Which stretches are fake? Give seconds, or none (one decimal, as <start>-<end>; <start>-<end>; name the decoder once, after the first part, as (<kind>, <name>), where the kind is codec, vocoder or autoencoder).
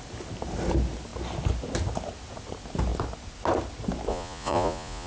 4.1-5.1 (vocoder, Vocos)